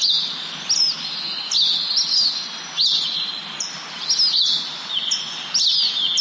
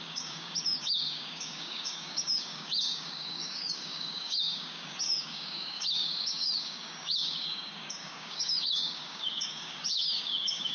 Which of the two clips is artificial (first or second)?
second